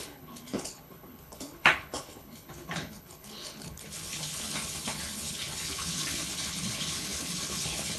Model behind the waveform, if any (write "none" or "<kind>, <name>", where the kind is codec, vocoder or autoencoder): codec, HILCodec